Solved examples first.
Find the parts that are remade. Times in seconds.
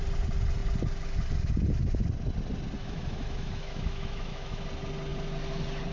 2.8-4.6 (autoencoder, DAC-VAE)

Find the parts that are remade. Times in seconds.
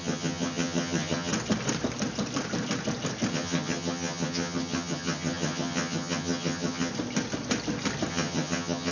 0.0-1.3 (vocoder, HiFi-GAN); 3.3-6.9; 8.1-8.9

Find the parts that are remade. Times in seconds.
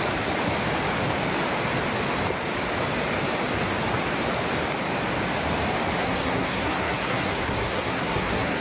6.0-8.6 (codec, SNAC)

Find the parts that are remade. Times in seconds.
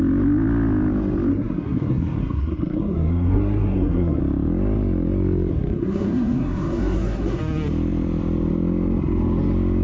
1.3-4.2 (codec, SNAC); 5.5-7.4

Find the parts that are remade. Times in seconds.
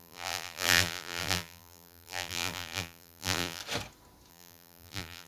0.0-3.6 (vocoder, BigVGAN v2); 4.3-5.3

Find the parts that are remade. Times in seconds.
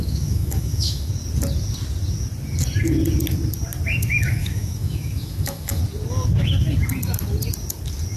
0.0-1.1 (autoencoder, DAC-VAE); 4.2-5.8